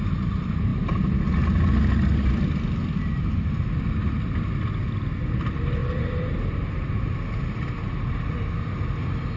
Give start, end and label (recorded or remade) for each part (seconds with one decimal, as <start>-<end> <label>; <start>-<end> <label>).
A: 0.0-5.8 recorded; 5.8-7.1 remade; 7.1-9.4 recorded